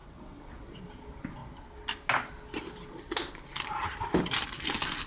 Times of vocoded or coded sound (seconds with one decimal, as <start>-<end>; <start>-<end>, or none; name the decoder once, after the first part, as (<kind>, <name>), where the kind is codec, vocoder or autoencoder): 0.0-0.8 (vocoder, WaveNeXt)